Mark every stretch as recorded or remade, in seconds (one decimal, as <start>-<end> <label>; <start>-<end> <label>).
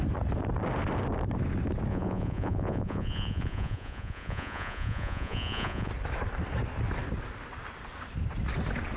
0.0-1.9 recorded; 1.9-5.9 remade; 5.9-9.0 recorded